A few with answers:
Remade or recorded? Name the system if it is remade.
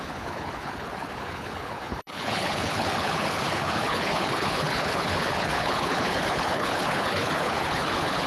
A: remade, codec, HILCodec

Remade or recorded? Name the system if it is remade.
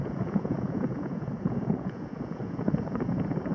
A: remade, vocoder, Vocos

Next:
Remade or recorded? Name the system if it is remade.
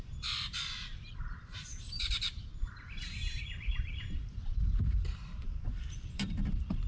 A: remade, vocoder, BigVGAN v2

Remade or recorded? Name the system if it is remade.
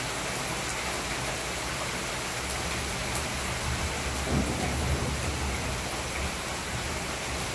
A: recorded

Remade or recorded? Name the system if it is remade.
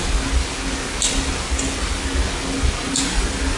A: recorded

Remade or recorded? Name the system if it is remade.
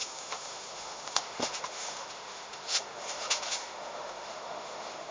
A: remade, autoencoder, DAC-VAE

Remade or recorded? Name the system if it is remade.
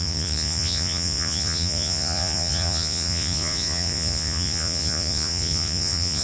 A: remade, vocoder, Vocos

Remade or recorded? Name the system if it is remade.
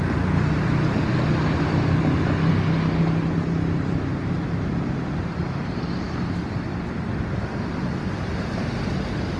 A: recorded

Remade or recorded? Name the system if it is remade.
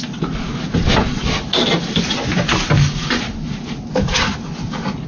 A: recorded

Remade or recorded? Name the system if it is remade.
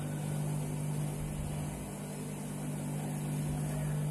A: recorded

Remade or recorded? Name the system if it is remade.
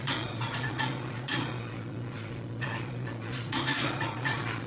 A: remade, vocoder, Vocos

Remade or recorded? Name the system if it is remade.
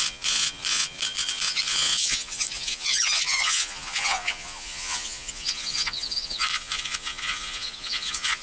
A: remade, vocoder, Vocos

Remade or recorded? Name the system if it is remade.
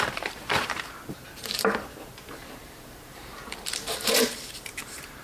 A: remade, vocoder, BigVGAN v2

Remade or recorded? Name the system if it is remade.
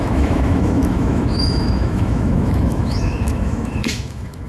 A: remade, autoencoder, DAC-VAE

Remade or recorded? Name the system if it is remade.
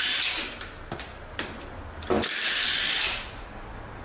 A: recorded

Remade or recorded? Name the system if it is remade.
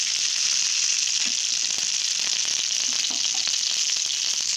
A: recorded